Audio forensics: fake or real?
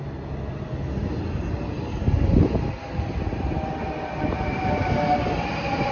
real